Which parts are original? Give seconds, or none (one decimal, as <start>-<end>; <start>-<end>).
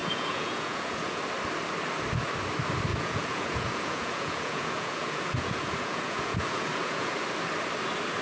1.2-2.9; 7.1-8.2